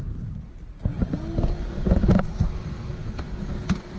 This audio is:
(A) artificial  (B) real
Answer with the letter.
A